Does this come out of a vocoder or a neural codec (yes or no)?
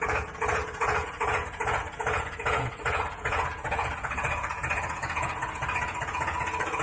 yes